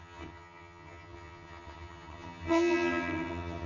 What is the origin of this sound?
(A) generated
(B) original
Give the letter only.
A